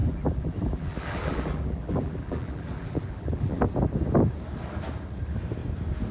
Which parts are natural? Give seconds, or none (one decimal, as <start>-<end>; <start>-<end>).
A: 3.7-6.1